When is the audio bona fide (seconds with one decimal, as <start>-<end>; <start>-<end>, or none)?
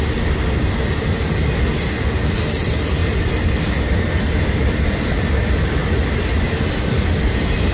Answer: 0.0-7.7